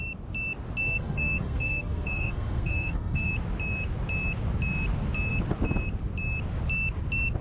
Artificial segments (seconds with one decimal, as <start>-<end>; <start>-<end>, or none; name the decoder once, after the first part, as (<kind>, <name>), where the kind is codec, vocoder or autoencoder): 0.8-3.3 (codec, SNAC)